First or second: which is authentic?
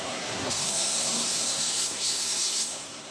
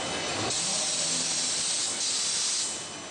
second